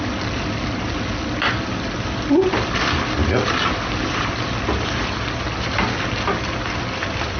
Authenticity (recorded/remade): recorded